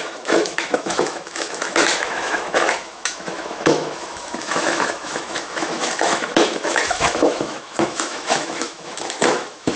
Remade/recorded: remade